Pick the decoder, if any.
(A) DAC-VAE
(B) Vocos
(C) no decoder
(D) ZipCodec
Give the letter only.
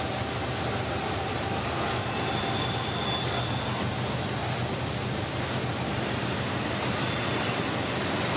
C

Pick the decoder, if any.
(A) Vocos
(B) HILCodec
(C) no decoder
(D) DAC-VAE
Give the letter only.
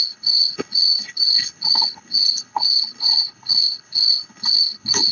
B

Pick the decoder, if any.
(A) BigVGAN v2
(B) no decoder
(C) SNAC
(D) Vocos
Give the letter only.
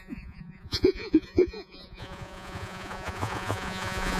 D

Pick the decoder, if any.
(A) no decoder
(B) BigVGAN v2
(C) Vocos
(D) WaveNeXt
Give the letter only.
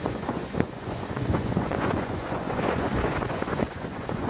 C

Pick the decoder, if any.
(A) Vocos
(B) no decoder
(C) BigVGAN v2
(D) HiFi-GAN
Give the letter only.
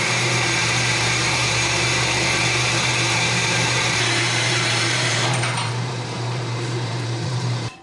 C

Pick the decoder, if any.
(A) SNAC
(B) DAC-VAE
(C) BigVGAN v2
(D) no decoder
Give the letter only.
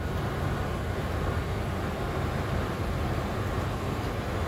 D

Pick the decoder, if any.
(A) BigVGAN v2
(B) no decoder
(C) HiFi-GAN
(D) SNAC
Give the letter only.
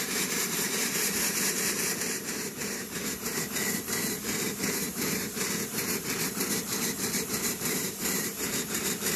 A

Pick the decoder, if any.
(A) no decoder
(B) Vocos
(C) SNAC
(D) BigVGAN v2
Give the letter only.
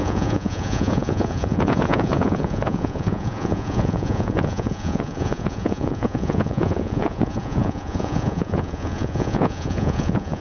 B